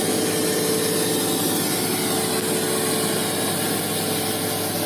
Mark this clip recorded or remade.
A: recorded